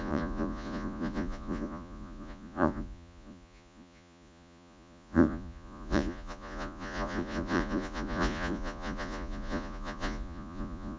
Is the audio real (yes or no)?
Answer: no